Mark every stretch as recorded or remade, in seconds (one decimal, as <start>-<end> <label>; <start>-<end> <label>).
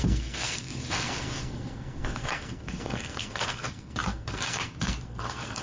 0.0-5.6 remade